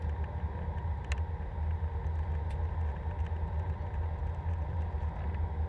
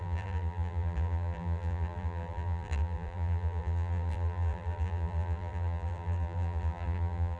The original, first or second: first